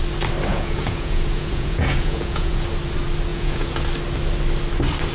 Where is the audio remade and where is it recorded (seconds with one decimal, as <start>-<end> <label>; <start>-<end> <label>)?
0.0-0.5 recorded; 0.5-2.6 remade; 2.6-3.3 recorded; 3.3-3.8 remade; 3.8-5.1 recorded